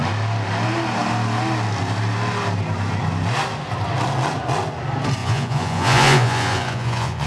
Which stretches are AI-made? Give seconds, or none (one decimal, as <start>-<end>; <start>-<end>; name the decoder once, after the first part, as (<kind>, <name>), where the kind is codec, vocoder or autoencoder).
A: 5.2-7.3 (vocoder, Vocos)